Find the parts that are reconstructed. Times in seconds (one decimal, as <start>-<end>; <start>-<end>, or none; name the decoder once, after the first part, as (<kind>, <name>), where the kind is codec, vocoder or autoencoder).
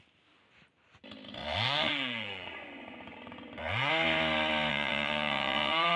1.4-3.9 (vocoder, Vocos); 4.7-6.0